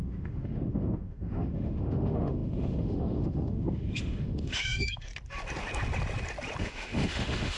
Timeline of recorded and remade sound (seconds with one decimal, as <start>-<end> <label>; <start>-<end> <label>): 0.0-5.1 remade; 5.1-6.6 recorded; 6.6-7.6 remade